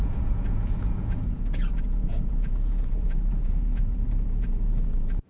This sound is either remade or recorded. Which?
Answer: remade